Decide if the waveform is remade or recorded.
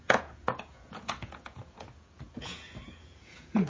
remade